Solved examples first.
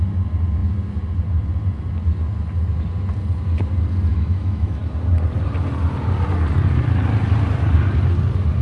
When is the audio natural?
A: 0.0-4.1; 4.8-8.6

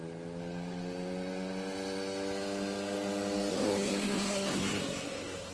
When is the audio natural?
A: 0.0-3.5